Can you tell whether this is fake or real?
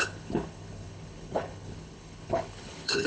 fake